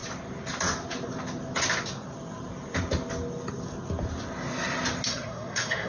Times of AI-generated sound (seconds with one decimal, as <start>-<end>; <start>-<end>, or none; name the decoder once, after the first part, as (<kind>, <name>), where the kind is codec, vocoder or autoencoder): 5.1-5.9 (codec, SNAC)